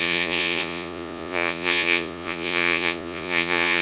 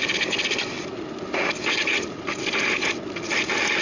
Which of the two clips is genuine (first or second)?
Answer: second